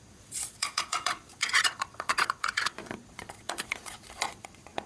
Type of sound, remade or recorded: remade